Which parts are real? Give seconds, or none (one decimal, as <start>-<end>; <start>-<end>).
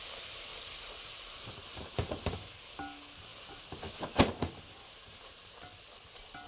0.0-0.5; 1.8-5.0; 5.6-6.5